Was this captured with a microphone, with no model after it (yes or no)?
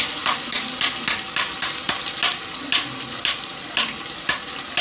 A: yes